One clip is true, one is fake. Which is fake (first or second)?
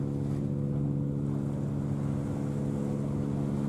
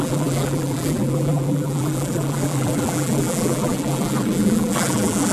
second